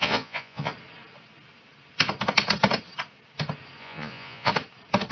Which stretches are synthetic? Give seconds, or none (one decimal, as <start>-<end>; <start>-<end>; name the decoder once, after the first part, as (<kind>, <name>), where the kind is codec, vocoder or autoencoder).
0.0-0.7 (vocoder, Vocos); 3.8-4.5